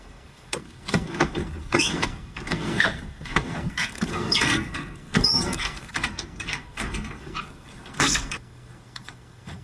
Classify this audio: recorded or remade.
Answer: remade